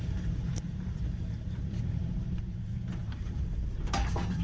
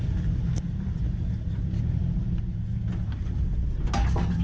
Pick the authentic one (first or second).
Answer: second